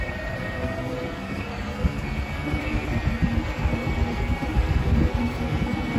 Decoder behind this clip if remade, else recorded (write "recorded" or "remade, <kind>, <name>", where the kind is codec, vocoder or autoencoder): remade, codec, SNAC